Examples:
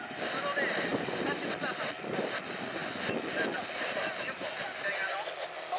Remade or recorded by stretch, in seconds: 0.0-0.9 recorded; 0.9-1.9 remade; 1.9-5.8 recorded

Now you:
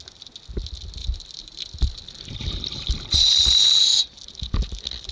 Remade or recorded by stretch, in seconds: 0.0-1.0 recorded; 1.0-4.0 remade; 4.0-5.1 recorded